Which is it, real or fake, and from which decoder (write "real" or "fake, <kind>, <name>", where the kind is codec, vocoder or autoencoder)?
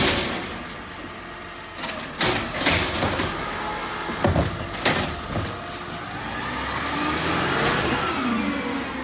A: real